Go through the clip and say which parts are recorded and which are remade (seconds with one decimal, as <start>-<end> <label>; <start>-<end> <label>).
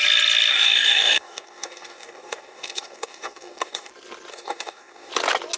0.0-0.5 recorded; 0.5-3.9 remade; 3.9-4.3 recorded; 4.3-5.1 remade; 5.1-5.6 recorded